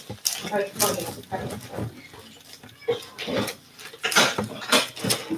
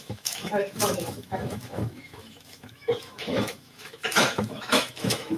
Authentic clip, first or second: first